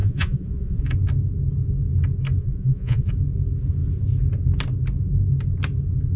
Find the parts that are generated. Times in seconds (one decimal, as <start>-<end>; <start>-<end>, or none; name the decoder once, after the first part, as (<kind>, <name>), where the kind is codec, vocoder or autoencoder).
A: 0.0-0.8 (vocoder, Vocos); 2.4-3.1